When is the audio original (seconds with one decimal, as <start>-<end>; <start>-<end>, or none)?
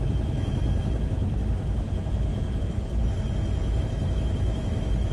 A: 2.3-3.8